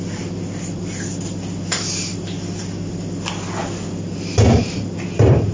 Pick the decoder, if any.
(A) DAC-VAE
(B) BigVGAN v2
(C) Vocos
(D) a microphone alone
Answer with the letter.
D